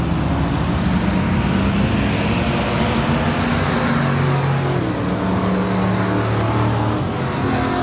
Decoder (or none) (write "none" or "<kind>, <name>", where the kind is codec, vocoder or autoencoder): none